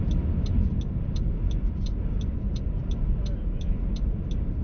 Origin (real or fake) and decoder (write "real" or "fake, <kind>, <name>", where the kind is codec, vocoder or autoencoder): real